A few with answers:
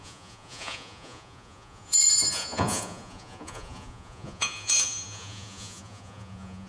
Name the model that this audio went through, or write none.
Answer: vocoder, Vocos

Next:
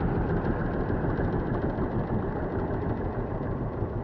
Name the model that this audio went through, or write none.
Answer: none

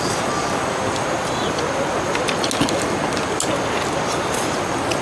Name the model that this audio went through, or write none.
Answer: none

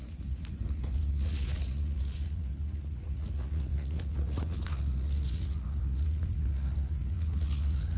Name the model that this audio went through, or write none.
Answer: vocoder, Vocos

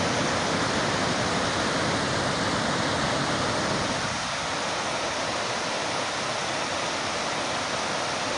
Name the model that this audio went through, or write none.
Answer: none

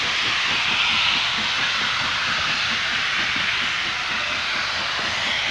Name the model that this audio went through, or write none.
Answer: none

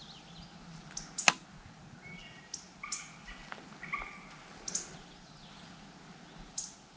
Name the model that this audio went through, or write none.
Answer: none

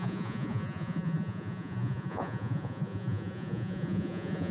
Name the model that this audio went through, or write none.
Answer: vocoder, Vocos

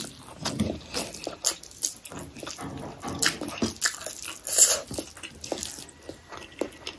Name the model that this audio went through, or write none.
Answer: none